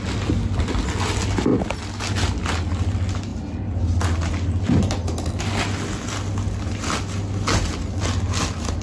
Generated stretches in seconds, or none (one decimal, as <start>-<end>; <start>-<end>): none